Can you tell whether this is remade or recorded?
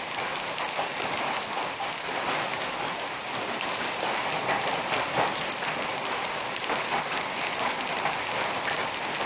recorded